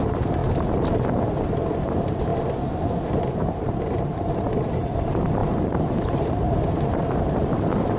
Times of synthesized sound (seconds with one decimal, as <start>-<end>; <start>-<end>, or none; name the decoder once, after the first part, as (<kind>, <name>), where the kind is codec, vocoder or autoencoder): 0.0-0.4 (vocoder, BigVGAN v2); 1.5-2.3; 3.2-8.0